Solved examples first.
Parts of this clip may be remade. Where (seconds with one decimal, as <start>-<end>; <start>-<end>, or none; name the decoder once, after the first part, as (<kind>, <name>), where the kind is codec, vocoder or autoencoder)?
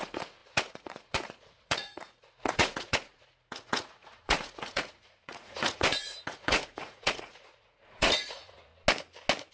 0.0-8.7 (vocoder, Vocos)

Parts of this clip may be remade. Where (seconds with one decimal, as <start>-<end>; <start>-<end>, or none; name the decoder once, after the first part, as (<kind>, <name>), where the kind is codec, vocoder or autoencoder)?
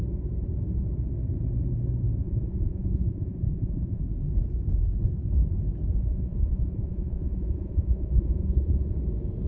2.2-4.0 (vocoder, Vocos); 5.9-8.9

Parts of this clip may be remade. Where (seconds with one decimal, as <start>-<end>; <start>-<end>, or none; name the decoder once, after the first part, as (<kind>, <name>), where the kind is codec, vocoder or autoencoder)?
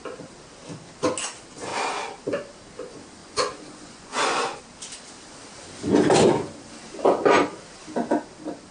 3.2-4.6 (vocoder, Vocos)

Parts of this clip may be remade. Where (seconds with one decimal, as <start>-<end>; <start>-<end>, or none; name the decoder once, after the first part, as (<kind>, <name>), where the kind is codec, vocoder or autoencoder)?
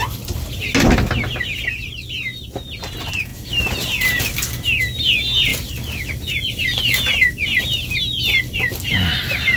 none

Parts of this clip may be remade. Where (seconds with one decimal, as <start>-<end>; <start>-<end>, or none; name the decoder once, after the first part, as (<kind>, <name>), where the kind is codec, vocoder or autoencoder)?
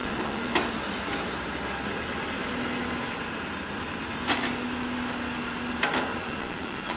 0.0-0.5 (vocoder, Vocos); 6.1-7.0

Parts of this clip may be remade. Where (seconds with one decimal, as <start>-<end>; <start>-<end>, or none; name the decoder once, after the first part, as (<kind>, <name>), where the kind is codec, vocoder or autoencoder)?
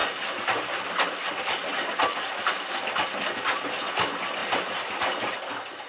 none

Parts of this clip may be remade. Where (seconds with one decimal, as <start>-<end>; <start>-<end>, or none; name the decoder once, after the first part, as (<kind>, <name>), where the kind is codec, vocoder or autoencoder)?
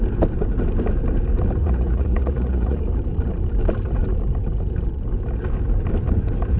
1.6-2.8 (vocoder, Vocos)